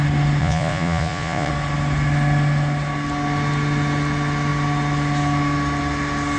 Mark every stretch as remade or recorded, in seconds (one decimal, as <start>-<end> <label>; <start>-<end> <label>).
0.0-0.4 recorded; 0.4-1.5 remade; 1.5-6.4 recorded